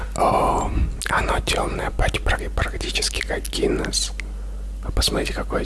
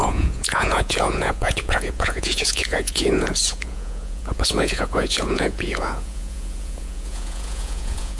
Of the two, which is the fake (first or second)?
second